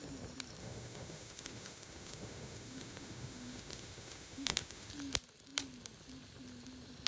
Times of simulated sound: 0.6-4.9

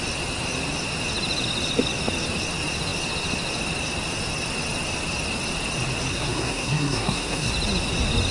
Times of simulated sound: 6.1-7.5

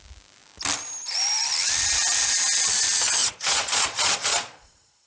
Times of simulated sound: 3.2-5.1

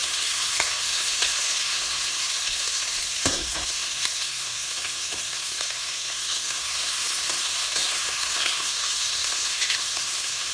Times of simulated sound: 0.0-10.5

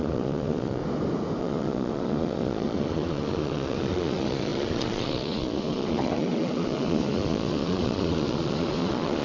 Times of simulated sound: 0.0-0.8; 1.4-9.2

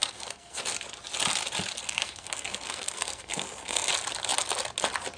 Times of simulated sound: 0.0-0.6; 1.8-3.9

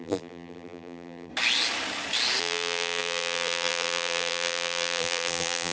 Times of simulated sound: 0.0-1.3; 2.4-5.7

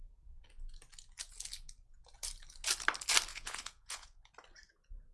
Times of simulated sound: 3.3-4.3